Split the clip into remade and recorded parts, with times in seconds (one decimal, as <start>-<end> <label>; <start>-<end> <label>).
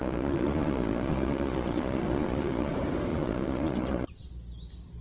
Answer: 0.0-2.7 remade; 2.7-3.1 recorded; 3.1-4.3 remade; 4.3-5.0 recorded